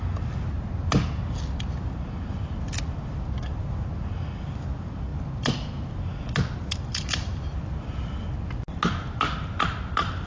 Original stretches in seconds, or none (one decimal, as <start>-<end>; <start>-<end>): 0.0-10.3